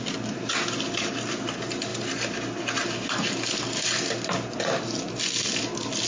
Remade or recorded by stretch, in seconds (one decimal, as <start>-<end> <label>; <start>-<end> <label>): 0.0-6.1 recorded